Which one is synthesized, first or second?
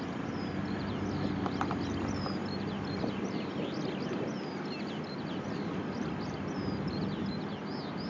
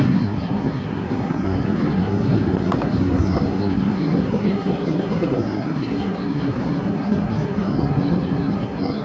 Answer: second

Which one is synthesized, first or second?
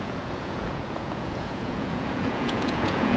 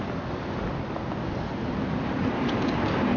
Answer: first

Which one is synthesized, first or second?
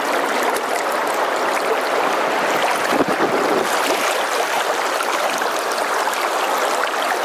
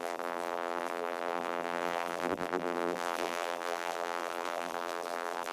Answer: second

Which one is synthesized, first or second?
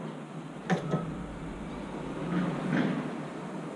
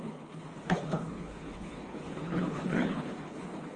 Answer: second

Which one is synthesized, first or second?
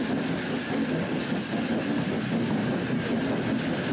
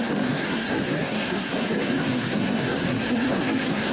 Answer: second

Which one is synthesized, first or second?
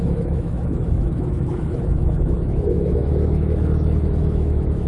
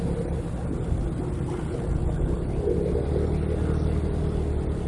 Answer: first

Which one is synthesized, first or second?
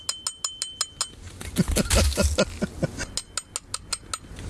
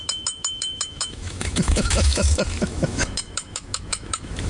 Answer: second